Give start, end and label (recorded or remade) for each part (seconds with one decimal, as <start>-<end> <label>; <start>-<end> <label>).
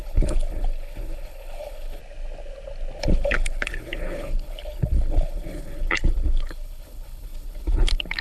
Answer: 0.0-2.0 remade; 2.0-3.0 recorded; 3.0-8.2 remade